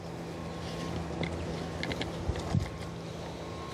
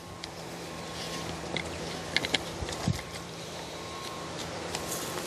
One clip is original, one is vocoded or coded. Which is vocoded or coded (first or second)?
second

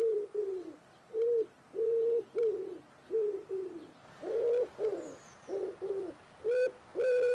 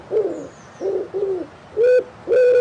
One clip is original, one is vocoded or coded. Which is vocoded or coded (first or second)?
first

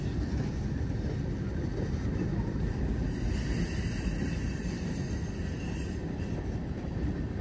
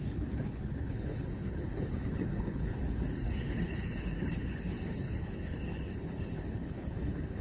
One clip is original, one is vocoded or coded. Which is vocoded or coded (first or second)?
second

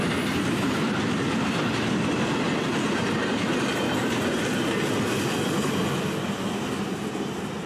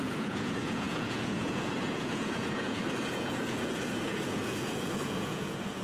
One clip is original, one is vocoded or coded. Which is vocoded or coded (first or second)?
second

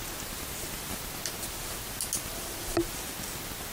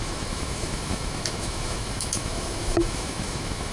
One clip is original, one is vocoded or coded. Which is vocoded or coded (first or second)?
second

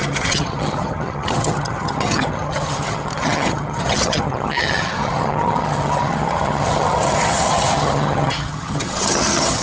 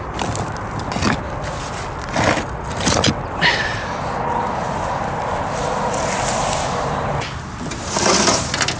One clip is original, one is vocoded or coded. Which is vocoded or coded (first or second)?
first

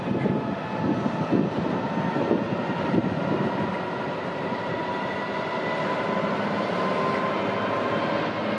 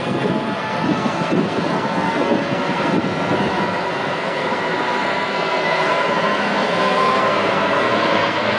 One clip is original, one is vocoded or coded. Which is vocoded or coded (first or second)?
second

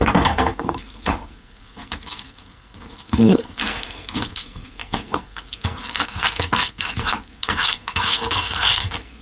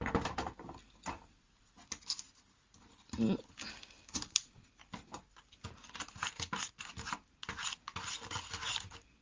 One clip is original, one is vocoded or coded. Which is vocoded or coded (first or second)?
first